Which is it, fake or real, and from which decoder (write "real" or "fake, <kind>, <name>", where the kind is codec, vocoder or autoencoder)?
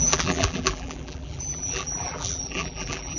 fake, vocoder, BigVGAN v2